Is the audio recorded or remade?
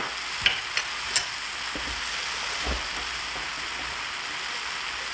recorded